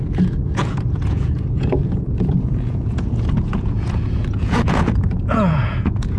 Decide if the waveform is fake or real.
fake